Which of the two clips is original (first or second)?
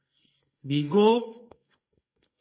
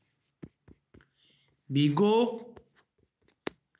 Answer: second